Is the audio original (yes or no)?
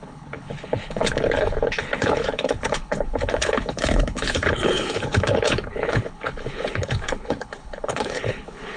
no